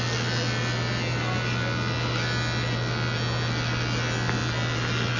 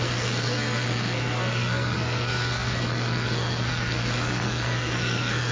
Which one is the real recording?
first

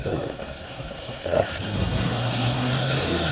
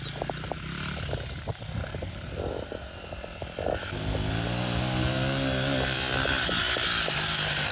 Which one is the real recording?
second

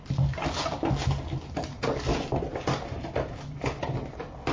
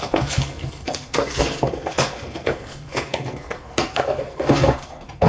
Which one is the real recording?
first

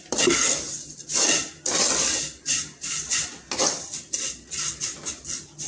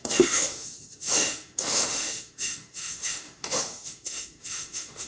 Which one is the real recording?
first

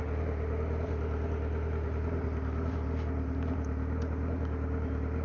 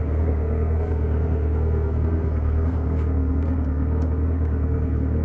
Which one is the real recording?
first